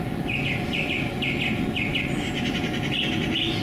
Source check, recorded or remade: recorded